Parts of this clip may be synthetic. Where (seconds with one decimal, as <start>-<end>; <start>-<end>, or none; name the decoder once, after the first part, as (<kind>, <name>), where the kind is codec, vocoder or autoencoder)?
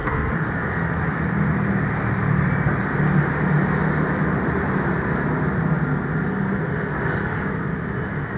0.0-0.5 (codec, SNAC)